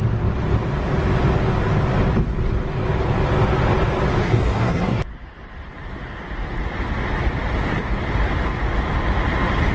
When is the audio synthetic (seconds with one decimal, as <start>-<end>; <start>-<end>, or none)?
4.2-5.0

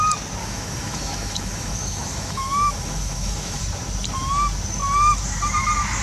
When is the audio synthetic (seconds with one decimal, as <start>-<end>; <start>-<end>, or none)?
0.4-3.6

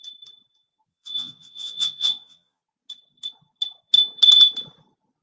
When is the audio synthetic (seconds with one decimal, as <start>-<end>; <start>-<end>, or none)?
0.9-2.6

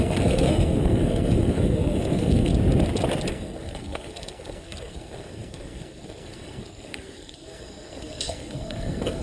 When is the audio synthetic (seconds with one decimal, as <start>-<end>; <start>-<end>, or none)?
0.0-2.5; 3.3-9.2